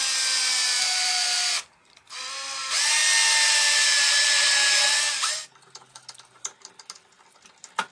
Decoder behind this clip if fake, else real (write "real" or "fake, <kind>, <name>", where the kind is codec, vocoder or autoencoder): real